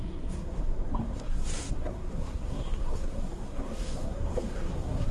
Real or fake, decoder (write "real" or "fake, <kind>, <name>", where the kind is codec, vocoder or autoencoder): fake, codec, SNAC